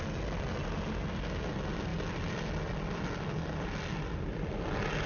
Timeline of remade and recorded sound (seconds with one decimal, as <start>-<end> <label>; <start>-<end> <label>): 0.0-5.1 recorded

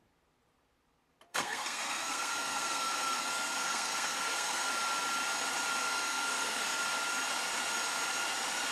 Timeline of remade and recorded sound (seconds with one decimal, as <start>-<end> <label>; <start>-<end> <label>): 0.0-1.3 recorded; 1.3-4.7 remade; 4.7-5.8 recorded; 5.8-6.8 remade; 6.8-8.7 recorded

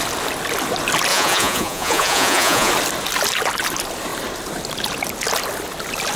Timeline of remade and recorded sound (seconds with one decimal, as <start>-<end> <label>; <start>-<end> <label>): 0.0-1.1 recorded; 1.1-2.7 remade; 2.7-6.2 recorded

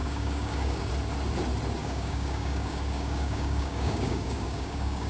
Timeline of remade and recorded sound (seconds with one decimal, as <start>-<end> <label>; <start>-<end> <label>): 0.0-0.9 remade; 0.9-1.8 recorded; 1.8-5.1 remade

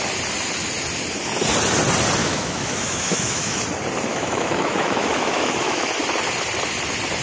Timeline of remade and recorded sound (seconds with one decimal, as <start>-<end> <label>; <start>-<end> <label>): 0.0-2.2 recorded; 2.2-3.6 remade; 3.6-4.1 recorded; 4.1-5.9 remade; 5.9-7.2 recorded